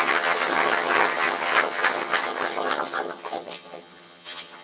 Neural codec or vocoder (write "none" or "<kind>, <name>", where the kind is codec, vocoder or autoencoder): vocoder, HiFi-GAN